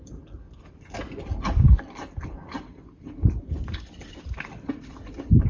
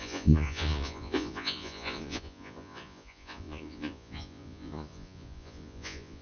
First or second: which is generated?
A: second